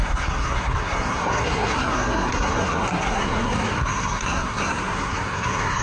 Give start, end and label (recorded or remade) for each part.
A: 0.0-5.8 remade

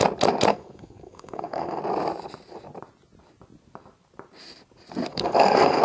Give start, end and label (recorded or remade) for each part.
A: 0.0-0.5 recorded; 0.5-1.8 remade; 1.8-5.1 recorded; 5.1-5.8 remade

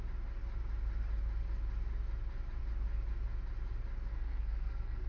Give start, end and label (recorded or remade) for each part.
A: 0.0-4.1 recorded; 4.1-5.1 remade